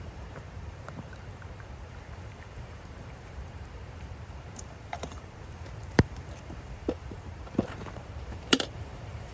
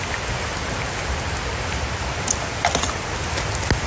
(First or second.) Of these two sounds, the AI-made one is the first